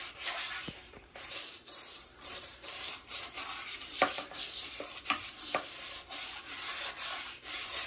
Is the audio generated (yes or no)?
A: yes